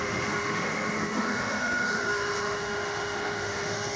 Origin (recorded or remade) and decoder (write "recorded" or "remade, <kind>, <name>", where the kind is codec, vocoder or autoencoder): remade, autoencoder, DAC-VAE